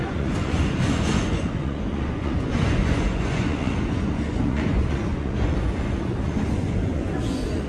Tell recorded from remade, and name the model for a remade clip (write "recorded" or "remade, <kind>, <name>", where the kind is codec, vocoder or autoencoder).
remade, vocoder, Vocos